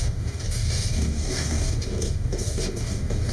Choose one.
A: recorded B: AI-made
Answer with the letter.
B